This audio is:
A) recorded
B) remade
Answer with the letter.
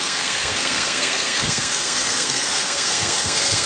B